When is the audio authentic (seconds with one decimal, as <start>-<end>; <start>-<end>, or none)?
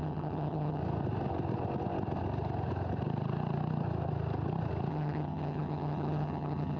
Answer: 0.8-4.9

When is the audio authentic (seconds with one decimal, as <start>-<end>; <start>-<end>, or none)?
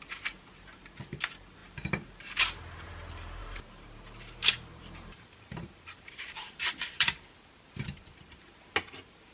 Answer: 0.0-1.6; 2.9-3.4; 7.9-9.3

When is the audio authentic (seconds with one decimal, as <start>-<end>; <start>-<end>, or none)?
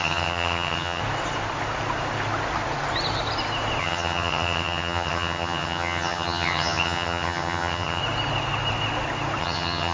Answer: 1.0-3.8; 8.0-9.4